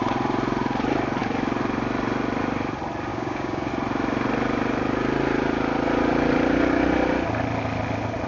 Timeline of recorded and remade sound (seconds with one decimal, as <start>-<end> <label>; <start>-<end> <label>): 0.0-3.1 recorded; 3.1-3.7 remade; 3.7-8.3 recorded